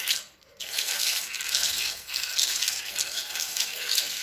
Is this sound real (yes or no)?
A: no